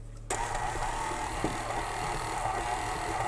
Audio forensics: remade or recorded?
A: recorded